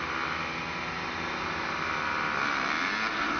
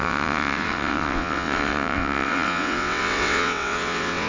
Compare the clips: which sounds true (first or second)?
first